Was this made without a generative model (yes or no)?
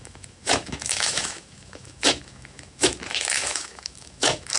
no